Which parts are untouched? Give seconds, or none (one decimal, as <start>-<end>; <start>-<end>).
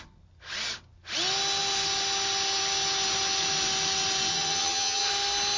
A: 0.0-4.3; 5.1-5.6